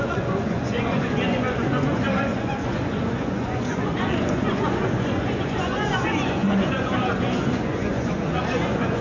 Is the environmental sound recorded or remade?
remade